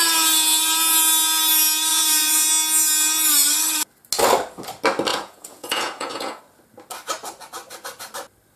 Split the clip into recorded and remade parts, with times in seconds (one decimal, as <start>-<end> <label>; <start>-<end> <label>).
0.0-1.9 recorded; 1.9-2.5 remade; 2.5-5.1 recorded; 5.1-6.4 remade; 6.4-8.6 recorded